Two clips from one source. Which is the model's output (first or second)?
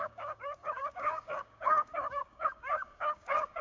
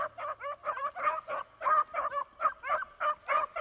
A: first